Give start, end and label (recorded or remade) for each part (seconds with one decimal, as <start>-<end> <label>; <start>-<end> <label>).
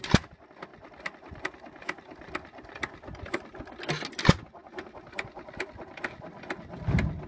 0.0-4.6 recorded; 4.6-5.5 remade; 5.5-7.3 recorded